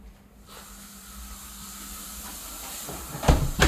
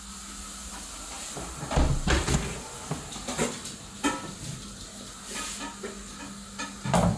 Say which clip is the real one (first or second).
second